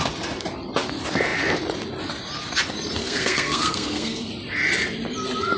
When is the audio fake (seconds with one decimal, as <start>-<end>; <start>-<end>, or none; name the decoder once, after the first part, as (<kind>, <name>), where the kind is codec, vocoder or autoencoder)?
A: 3.0-4.3 (codec, SNAC)